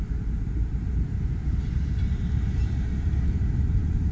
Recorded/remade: remade